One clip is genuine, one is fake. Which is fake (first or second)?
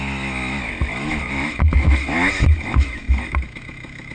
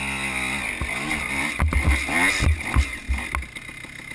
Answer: first